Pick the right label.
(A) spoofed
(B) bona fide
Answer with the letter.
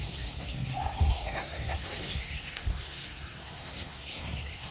A